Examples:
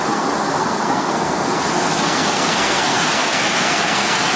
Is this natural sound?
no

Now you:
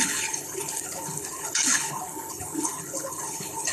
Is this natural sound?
no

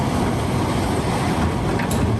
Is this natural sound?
yes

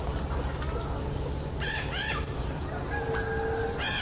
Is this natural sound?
yes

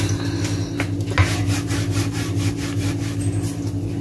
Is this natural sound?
yes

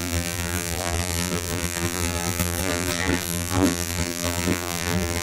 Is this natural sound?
no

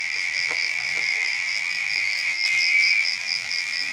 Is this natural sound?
no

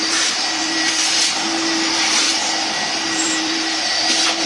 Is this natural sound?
no